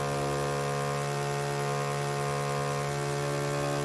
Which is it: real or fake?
real